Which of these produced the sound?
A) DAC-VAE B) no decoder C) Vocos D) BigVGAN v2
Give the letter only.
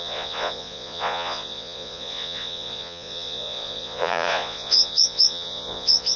C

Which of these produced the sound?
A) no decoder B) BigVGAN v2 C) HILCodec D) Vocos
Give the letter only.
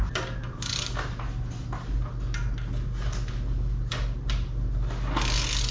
A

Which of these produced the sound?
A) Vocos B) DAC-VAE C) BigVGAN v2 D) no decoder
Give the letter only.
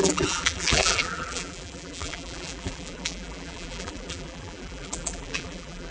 C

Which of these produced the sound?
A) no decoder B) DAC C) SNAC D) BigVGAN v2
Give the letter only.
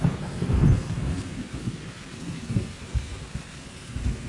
C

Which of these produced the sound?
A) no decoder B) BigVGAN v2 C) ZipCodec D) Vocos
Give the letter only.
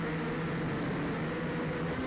A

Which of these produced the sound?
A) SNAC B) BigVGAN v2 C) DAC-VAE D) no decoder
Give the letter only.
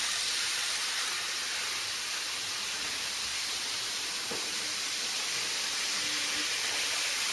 D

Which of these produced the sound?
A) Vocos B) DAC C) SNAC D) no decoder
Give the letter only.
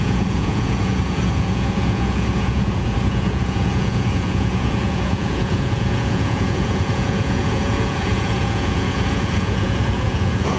A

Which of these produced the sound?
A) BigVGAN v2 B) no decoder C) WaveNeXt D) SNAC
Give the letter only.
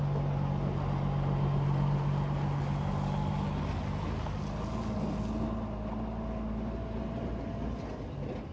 B